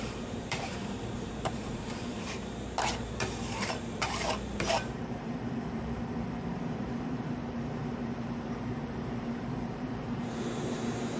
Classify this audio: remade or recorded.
remade